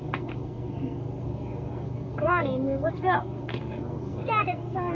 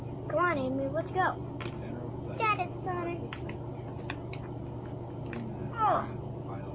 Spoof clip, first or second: first